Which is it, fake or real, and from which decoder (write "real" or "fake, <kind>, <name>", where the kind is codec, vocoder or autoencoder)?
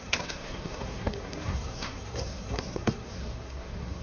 fake, codec, SNAC